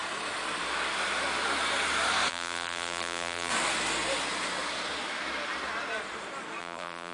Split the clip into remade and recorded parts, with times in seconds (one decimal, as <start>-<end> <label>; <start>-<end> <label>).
0.0-2.3 recorded; 2.3-3.5 remade; 3.5-6.6 recorded; 6.6-7.1 remade